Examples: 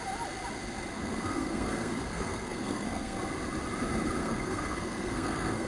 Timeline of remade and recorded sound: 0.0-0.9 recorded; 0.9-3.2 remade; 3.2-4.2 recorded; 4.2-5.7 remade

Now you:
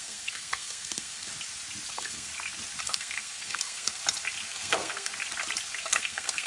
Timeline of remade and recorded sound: 0.0-1.3 remade; 1.3-1.9 recorded; 1.9-2.3 remade; 2.3-2.8 recorded; 2.8-4.0 remade; 4.0-4.5 recorded; 4.5-5.1 remade; 5.1-5.8 recorded; 5.8-6.5 remade